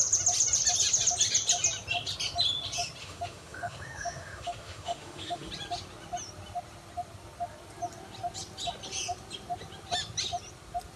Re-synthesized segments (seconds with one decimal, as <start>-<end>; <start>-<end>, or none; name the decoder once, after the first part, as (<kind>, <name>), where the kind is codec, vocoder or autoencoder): 3.0-5.5 (autoencoder, DAC-VAE)